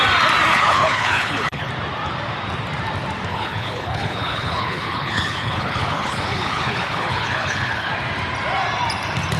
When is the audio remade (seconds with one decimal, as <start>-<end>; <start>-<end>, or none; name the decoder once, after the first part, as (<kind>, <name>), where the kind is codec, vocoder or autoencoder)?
0.5-1.7 (codec, HILCodec); 3.3-7.9